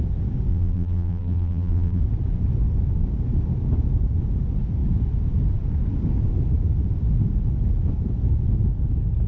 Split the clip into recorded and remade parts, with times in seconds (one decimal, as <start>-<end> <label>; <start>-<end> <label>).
0.0-0.5 recorded; 0.5-2.0 remade; 2.0-9.3 recorded